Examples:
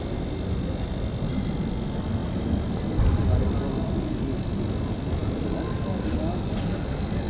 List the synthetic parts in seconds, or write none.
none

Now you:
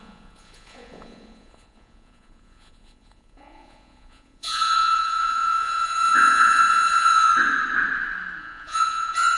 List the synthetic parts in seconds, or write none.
0.0-7.3 (vocoder, Vocos); 8.4-9.4

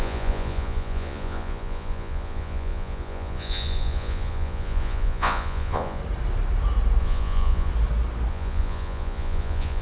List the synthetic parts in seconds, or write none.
0.0-6.0 (vocoder, Vocos); 7.0-7.7; 8.3-9.8

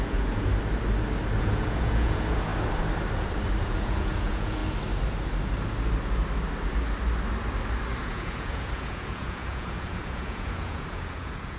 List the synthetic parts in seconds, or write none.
0.0-0.5 (vocoder, Vocos); 1.4-2.5; 3.6-4.6; 8.0-11.6

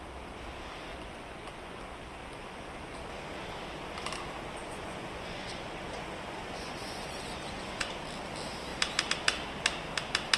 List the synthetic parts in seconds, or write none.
0.9-1.8 (vocoder, Vocos); 2.2-3.0; 4.6-7.9